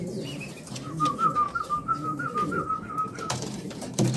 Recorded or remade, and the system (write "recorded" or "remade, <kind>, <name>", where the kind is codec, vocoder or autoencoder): remade, vocoder, BigVGAN v2